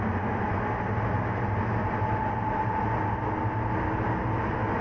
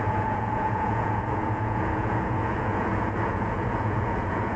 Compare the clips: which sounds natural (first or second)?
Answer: first